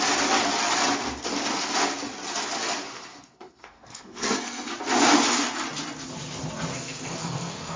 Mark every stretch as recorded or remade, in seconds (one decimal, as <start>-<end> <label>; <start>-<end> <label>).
0.0-2.9 recorded; 2.9-4.7 remade; 4.7-6.7 recorded; 6.7-7.8 remade